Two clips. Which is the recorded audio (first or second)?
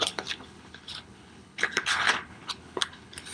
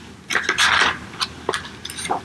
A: second